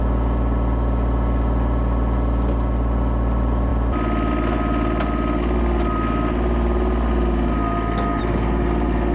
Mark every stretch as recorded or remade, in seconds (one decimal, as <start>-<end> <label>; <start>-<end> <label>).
0.0-9.1 recorded